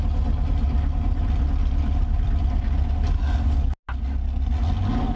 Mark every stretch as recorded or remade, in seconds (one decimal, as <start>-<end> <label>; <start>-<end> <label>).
0.0-1.6 recorded; 1.6-3.2 remade; 3.2-5.2 recorded